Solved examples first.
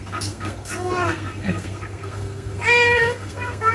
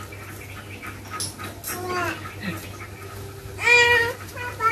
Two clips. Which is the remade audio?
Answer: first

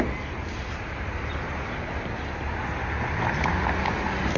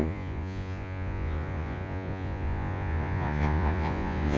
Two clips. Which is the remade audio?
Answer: second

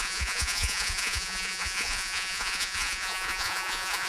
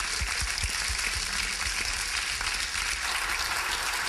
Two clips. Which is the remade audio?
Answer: first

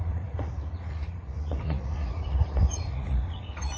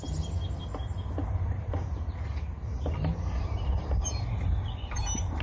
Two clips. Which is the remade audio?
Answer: first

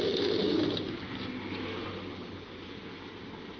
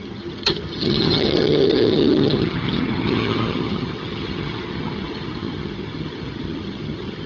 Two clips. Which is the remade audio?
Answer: second